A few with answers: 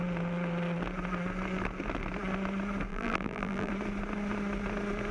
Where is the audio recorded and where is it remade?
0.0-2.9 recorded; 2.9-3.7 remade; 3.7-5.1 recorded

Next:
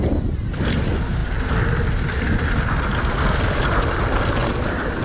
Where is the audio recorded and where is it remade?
0.0-4.4 recorded; 4.4-5.0 remade

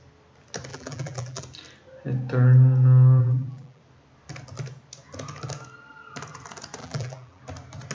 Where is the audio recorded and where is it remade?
0.0-0.7 recorded; 0.7-1.4 remade; 1.4-3.2 recorded; 3.2-3.8 remade; 3.8-6.8 recorded; 6.8-7.4 remade; 7.4-7.9 recorded